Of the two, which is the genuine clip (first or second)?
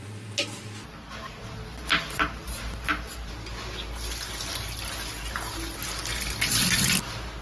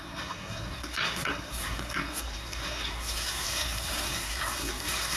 first